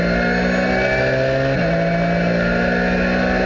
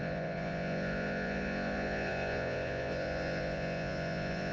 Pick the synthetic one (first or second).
second